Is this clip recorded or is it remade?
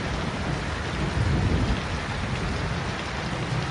recorded